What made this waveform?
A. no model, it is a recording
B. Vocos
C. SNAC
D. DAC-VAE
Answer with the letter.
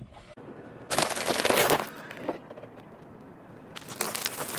A